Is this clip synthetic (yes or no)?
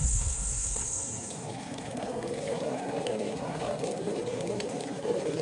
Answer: yes